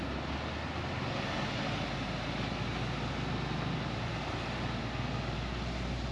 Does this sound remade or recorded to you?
recorded